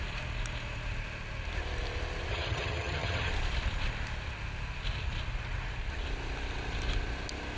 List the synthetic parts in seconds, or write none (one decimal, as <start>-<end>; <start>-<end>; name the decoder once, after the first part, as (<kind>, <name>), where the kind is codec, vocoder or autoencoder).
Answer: 2.3-3.3 (vocoder, HiFi-GAN)